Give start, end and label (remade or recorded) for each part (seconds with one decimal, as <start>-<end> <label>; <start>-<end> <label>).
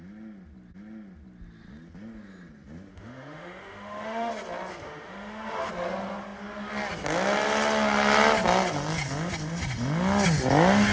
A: 0.0-2.9 recorded; 2.9-4.3 remade; 4.3-4.7 recorded; 4.7-5.7 remade; 5.7-10.9 recorded